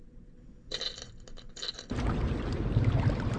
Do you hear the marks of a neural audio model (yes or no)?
no